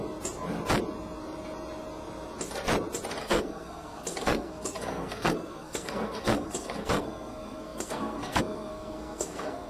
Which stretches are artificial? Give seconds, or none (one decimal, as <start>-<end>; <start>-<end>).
3.2-9.7

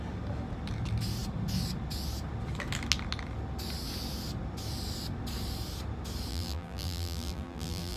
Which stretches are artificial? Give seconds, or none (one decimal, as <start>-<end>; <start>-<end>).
6.3-8.0

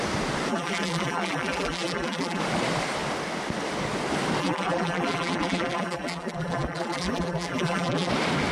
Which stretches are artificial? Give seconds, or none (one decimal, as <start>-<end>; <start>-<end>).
0.5-2.4; 4.4-8.1

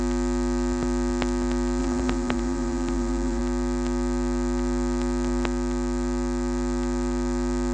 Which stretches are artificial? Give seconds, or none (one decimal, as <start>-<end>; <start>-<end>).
1.8-3.4